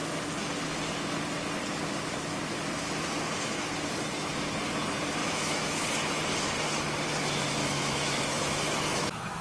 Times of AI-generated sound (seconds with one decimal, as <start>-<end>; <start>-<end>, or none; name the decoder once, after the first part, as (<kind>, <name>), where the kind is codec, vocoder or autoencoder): 5.2-5.9 (autoencoder, DAC-VAE); 7.6-9.4